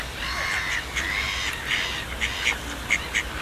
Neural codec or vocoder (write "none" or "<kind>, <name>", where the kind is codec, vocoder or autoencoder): none